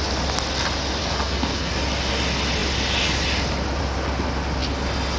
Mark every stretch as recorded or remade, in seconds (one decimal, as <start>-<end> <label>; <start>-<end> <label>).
0.0-1.0 recorded; 1.0-1.7 remade; 1.7-5.2 recorded

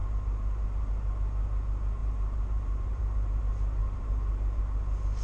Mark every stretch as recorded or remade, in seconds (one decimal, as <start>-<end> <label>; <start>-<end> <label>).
0.0-0.9 remade; 0.9-2.0 recorded; 2.0-3.4 remade; 3.4-3.8 recorded; 3.8-4.6 remade; 4.6-5.2 recorded